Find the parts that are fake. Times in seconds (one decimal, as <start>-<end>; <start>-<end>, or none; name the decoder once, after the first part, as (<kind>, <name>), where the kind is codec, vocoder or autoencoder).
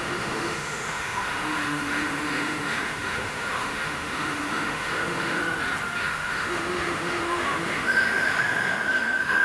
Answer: 0.0-5.4 (autoencoder, DAC-VAE); 6.0-9.4